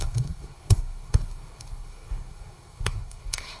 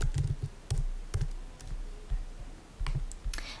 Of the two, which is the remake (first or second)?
first